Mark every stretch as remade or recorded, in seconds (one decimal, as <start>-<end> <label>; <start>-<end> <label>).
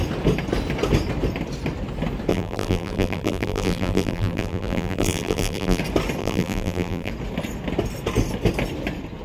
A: 0.0-2.3 recorded; 2.3-5.8 remade; 5.8-6.2 recorded; 6.2-7.1 remade; 7.1-9.2 recorded